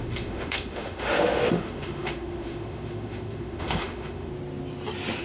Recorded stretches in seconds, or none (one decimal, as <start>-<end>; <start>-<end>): 4.3-5.2